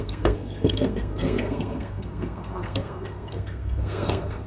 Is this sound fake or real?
fake